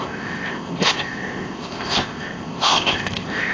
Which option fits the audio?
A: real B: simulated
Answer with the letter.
B